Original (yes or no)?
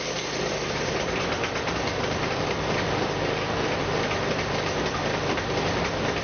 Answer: no